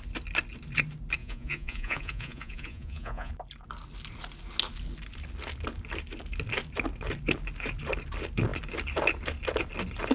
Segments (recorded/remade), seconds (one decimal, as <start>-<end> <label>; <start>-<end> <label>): 0.0-1.2 recorded; 1.2-3.3 remade; 3.3-10.1 recorded